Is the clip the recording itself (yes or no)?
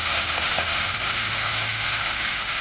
no